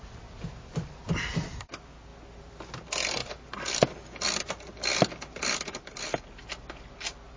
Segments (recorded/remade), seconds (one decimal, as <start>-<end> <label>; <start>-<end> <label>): 0.0-7.4 recorded